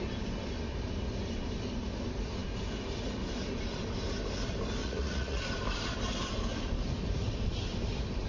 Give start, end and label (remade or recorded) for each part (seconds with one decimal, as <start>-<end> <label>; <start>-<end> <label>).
0.0-4.8 recorded; 4.8-5.4 remade; 5.4-8.3 recorded